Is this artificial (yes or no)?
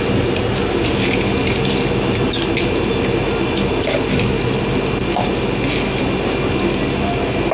no